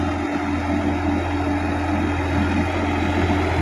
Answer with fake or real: real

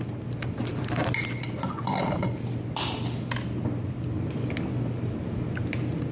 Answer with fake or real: real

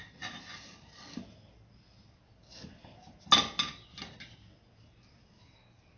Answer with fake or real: real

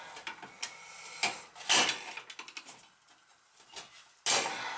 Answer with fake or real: real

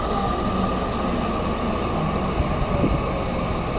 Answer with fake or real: real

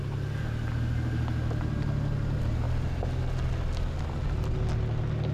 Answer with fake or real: real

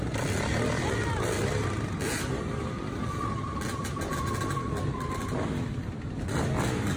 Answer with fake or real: real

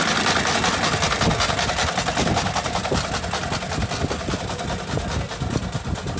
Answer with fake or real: real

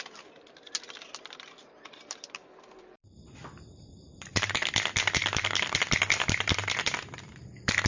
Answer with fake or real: fake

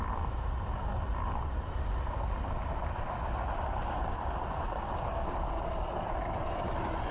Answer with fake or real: fake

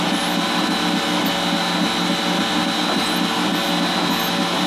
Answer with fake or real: real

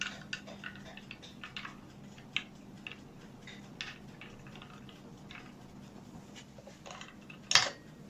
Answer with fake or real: real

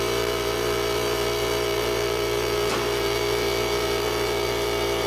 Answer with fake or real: fake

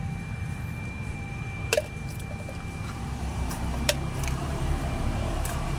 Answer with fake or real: fake